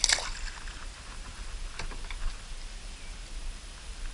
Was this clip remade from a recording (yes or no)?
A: no